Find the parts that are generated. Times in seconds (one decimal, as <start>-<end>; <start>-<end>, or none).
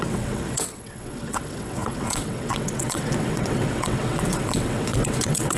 0.0-5.6